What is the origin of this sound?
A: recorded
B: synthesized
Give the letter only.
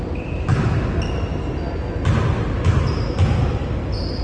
A